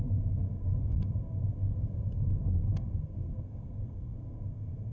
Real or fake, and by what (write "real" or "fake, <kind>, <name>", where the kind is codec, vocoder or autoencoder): fake, codec, SNAC